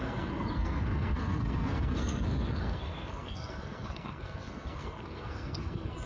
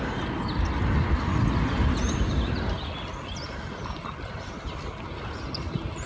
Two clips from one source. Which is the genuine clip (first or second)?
second